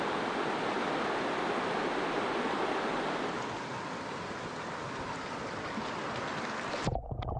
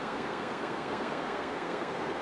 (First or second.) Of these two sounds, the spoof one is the second